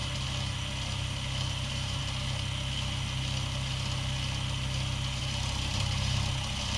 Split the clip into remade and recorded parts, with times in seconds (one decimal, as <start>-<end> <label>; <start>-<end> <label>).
0.0-1.4 recorded; 1.4-2.0 remade; 2.0-5.2 recorded; 5.2-6.8 remade